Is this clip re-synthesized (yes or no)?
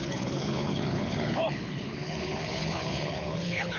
yes